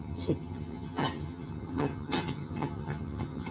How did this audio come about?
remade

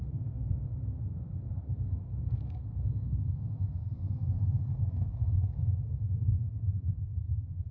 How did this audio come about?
remade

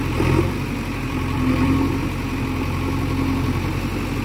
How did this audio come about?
recorded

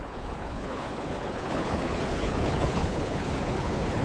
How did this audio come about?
remade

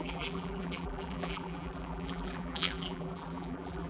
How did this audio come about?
remade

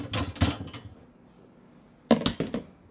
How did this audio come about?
recorded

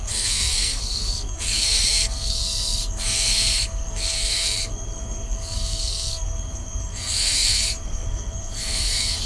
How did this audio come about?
remade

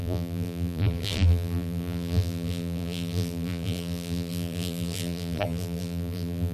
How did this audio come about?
remade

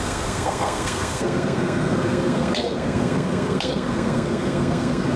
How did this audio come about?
remade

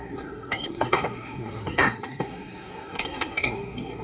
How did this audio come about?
remade